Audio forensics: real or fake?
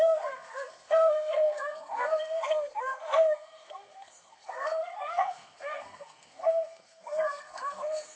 fake